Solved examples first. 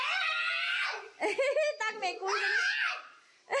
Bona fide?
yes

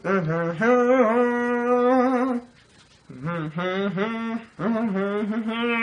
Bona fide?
yes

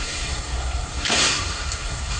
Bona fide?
no